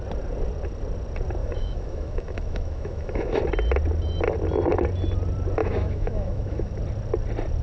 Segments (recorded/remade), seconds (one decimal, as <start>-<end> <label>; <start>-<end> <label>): 0.0-1.4 recorded; 1.4-3.4 remade; 3.4-5.6 recorded; 5.6-6.8 remade; 6.8-7.6 recorded